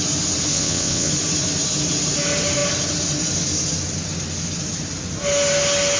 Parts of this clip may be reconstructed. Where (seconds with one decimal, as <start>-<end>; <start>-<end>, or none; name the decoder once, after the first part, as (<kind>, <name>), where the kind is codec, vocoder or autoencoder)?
0.5-1.1 (vocoder, WaveNeXt)